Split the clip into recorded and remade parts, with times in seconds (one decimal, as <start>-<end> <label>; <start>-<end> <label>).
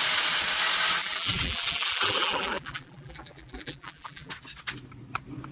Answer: 0.0-1.0 recorded; 1.0-4.3 remade; 4.3-5.5 recorded